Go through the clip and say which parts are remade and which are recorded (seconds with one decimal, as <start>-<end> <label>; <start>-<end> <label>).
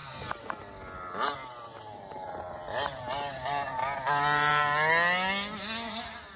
0.0-1.7 recorded; 1.7-4.5 remade; 4.5-6.4 recorded